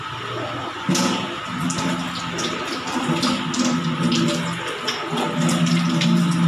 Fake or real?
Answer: real